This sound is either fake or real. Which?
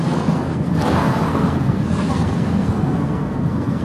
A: fake